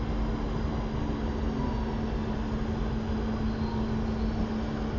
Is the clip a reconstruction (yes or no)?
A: no